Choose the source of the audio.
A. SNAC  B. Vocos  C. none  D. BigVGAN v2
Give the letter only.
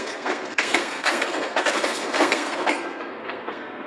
A